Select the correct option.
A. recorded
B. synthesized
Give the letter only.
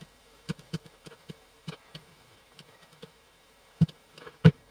B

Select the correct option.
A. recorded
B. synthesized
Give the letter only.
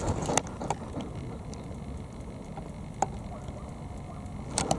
A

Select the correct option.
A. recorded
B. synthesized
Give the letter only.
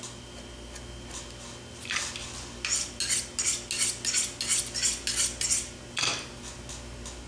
A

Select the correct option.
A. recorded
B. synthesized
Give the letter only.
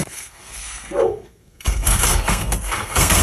B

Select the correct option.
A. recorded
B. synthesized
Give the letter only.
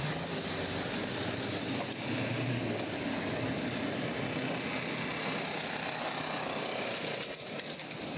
A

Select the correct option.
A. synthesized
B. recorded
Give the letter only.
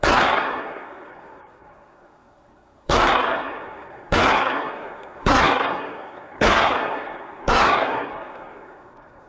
A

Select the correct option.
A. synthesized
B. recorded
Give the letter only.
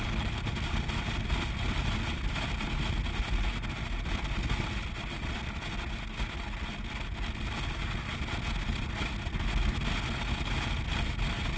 B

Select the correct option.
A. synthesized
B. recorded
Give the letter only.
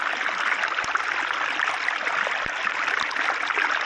B